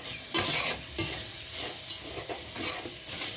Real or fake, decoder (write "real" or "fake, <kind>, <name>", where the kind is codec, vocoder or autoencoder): real